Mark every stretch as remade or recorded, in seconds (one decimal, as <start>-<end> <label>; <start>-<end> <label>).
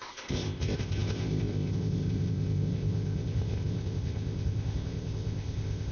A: 0.0-5.9 remade